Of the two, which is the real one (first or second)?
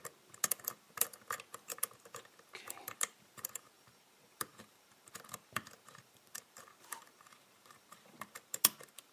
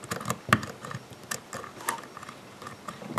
second